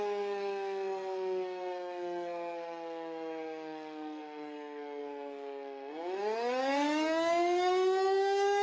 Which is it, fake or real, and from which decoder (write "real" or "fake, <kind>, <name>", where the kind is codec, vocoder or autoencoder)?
fake, codec, SNAC